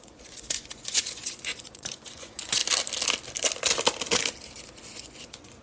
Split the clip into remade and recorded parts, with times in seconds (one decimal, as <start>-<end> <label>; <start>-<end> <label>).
0.0-2.6 remade; 2.6-4.8 recorded; 4.8-5.6 remade